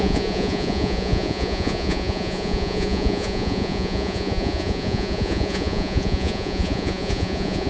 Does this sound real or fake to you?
fake